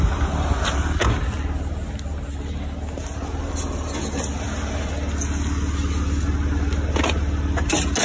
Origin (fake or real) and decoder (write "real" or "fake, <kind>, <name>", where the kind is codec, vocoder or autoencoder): real